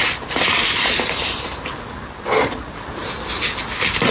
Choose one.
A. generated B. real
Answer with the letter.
B